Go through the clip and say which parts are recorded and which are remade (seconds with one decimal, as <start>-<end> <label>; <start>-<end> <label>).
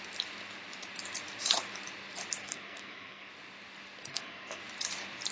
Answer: 0.0-2.4 recorded; 2.4-3.3 remade; 3.3-4.1 recorded; 4.1-4.6 remade; 4.6-5.3 recorded